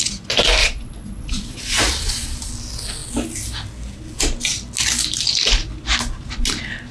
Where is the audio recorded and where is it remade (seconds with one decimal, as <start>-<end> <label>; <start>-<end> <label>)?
0.0-0.6 recorded; 0.6-2.5 remade; 2.5-6.9 recorded